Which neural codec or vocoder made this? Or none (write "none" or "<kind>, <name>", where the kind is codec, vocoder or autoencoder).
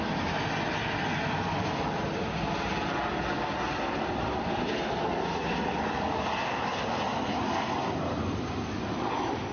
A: none